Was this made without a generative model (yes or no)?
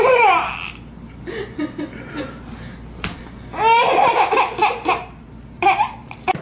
yes